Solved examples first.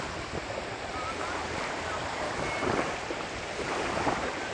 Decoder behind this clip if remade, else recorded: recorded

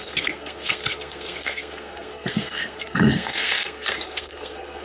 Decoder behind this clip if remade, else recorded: remade, codec, SNAC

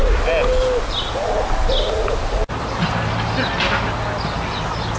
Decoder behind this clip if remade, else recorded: recorded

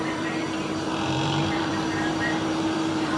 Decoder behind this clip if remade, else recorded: remade, vocoder, BigVGAN v2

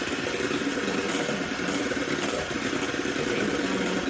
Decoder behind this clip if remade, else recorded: recorded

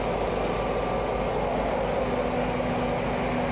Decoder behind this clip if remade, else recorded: recorded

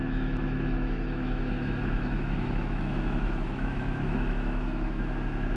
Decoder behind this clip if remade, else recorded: remade, autoencoder, DAC-VAE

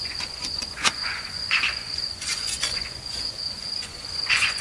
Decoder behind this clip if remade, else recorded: remade, vocoder, Vocos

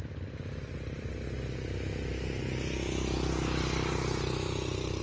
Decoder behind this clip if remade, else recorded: recorded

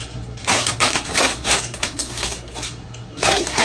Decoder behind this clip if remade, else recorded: remade, codec, SNAC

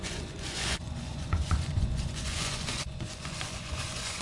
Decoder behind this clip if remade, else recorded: remade, vocoder, Vocos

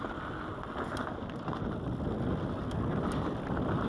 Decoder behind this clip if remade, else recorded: recorded